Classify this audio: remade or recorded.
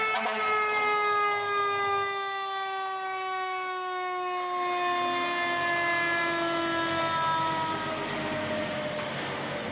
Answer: recorded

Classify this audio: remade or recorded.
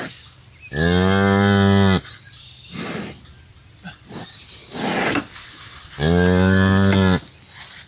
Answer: recorded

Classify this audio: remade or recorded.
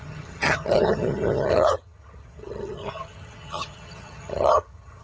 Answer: remade